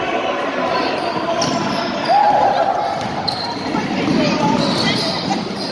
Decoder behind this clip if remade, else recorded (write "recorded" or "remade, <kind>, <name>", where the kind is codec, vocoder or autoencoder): recorded